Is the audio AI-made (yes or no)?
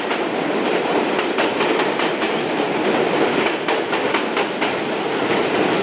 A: yes